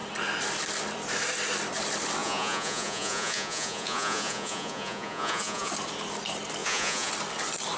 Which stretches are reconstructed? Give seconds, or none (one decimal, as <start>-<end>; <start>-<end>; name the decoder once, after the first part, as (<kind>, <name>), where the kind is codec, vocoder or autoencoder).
2.2-5.7 (vocoder, Vocos); 6.6-7.1